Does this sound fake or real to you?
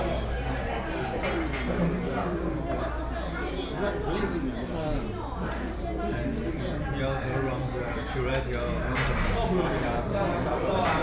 real